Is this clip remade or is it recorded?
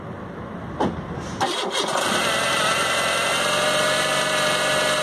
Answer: recorded